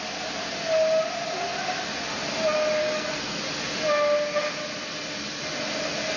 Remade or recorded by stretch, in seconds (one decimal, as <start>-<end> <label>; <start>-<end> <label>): 0.0-2.8 recorded; 2.8-3.4 remade; 3.4-6.2 recorded